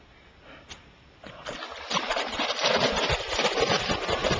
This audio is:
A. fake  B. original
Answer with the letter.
B